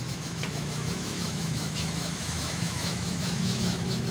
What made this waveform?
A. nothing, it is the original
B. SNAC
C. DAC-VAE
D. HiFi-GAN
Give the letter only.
C